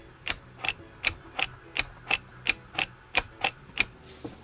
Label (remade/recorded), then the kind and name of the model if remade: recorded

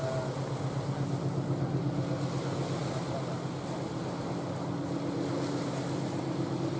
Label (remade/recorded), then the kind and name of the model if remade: recorded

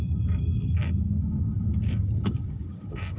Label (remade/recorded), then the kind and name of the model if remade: remade, codec, DAC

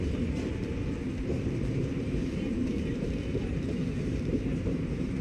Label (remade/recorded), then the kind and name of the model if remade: remade, vocoder, BigVGAN v2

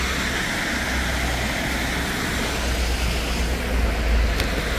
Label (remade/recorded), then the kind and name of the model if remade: recorded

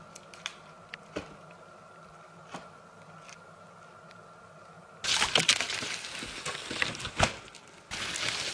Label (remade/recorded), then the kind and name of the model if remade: recorded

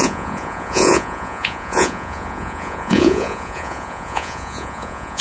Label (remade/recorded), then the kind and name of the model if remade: remade, vocoder, Vocos